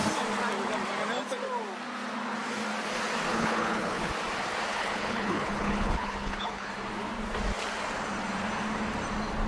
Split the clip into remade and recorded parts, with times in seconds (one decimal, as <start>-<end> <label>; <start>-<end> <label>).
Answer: 0.0-3.3 recorded; 3.3-4.1 remade; 4.1-4.7 recorded; 4.7-6.7 remade; 6.7-9.5 recorded